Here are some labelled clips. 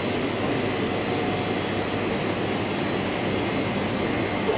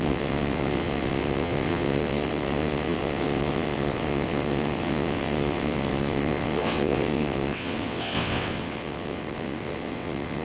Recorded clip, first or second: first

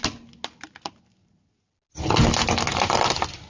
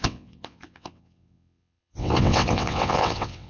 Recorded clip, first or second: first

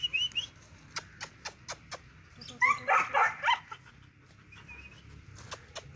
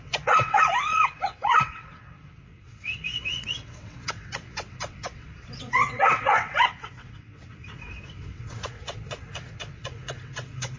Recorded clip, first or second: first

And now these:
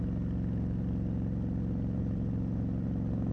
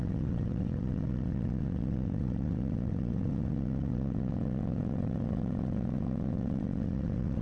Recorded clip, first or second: first